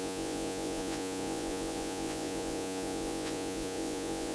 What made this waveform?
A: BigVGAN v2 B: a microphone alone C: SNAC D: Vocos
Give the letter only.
D